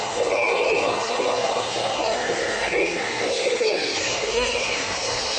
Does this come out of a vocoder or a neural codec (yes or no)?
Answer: yes